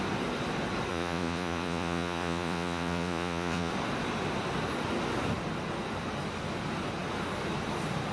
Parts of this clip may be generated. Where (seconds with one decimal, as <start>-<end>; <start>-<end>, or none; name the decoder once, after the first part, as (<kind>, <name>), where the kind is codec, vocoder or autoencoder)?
0.9-3.7 (vocoder, Vocos)